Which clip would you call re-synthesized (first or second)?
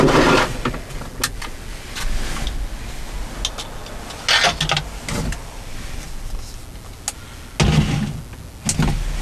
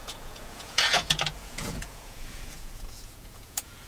second